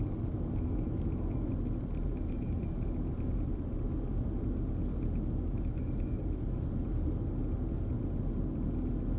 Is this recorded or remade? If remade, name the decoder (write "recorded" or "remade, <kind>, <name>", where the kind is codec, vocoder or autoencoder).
recorded